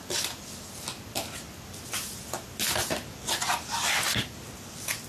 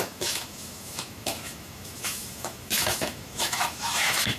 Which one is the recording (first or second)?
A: first